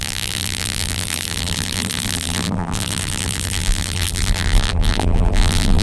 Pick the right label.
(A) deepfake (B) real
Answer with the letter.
A